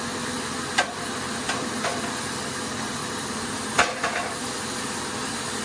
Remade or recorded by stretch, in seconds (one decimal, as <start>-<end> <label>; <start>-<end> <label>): 0.0-5.6 recorded